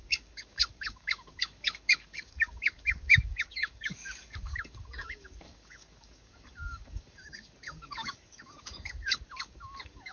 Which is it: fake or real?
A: fake